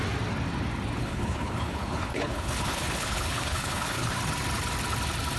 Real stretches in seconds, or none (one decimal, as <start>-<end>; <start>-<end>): 0.0-1.0; 4.2-5.4

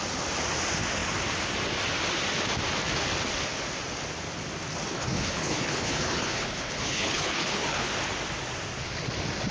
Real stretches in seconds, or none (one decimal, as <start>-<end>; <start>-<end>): 0.0-4.9; 7.9-9.5

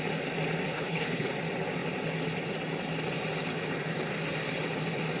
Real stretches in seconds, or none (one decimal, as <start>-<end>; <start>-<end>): 0.0-0.7; 1.3-5.2

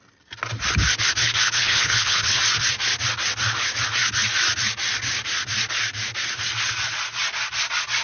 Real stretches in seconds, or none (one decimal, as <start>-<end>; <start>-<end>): 0.0-1.2; 2.4-8.0